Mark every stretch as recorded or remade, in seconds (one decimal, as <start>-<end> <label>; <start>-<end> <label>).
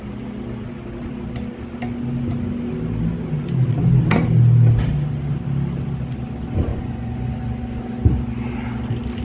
0.0-6.7 recorded; 6.7-7.3 remade; 7.3-9.2 recorded